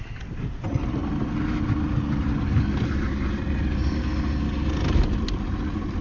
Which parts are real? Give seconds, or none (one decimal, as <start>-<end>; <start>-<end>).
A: 0.0-6.0